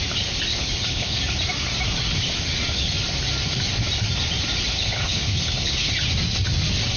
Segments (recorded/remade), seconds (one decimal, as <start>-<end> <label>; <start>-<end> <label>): 0.0-0.5 recorded; 0.5-1.2 remade; 1.2-4.7 recorded; 4.7-5.9 remade; 5.9-7.0 recorded